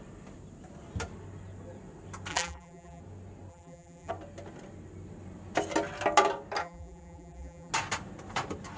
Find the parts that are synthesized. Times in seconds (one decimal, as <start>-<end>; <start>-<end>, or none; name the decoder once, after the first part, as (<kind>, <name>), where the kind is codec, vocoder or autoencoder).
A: 2.3-3.0 (vocoder, BigVGAN v2); 3.5-4.1; 6.6-7.7